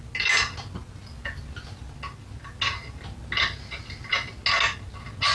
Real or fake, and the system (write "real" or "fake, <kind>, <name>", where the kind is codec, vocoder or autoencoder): real